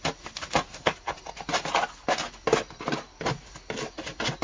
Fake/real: real